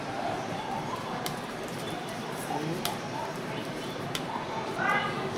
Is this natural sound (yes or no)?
no